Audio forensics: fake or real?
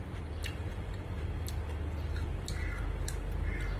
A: real